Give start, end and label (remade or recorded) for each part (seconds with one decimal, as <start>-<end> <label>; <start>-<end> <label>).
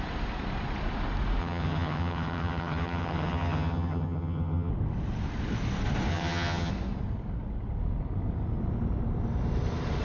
0.0-1.4 recorded; 1.4-4.7 remade; 4.7-6.1 recorded; 6.1-6.7 remade; 6.7-10.0 recorded